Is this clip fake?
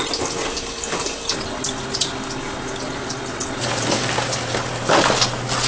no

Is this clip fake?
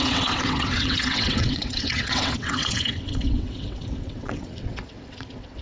yes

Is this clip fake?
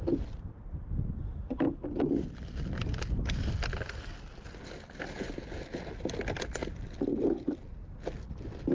no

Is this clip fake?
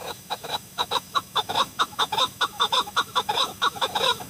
yes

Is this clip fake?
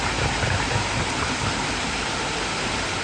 no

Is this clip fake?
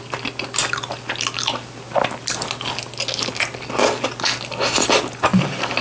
no